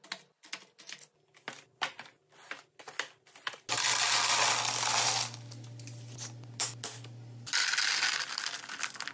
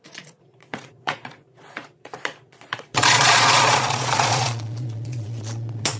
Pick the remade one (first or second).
second